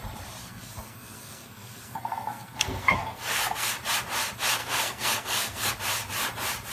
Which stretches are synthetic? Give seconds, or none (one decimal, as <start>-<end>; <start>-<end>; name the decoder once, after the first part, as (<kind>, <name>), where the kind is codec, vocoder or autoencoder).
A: 0.4-3.7 (codec, SNAC); 4.6-5.7